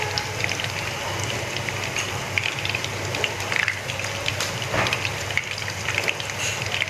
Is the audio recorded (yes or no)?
no